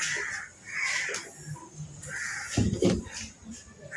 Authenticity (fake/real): real